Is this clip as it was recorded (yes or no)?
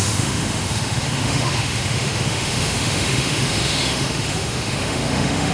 no